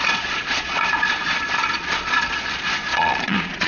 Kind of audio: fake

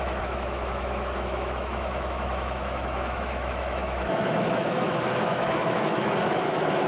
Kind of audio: fake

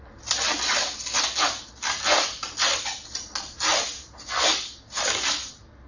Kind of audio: real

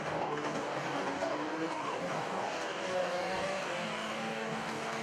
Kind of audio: fake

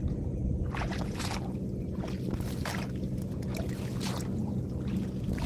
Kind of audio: real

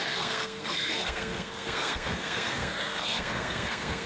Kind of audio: fake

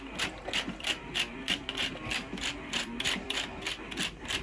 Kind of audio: fake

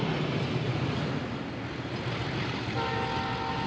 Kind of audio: real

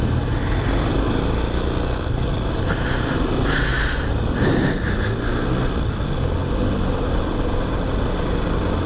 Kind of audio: real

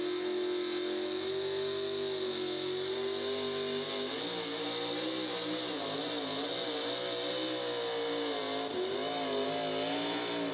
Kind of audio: real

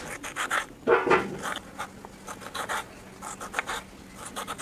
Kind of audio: real